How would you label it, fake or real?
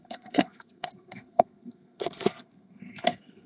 fake